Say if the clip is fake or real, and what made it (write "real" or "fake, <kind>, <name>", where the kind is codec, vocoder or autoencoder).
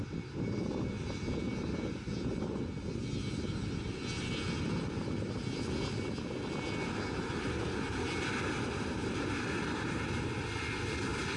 real